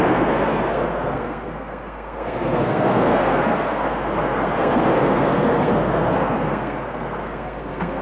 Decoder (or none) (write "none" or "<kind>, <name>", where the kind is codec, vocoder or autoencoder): codec, SNAC